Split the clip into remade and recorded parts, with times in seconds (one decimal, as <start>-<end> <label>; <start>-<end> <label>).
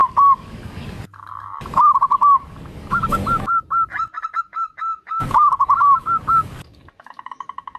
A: 0.0-3.2 remade; 3.2-4.4 recorded; 4.4-7.8 remade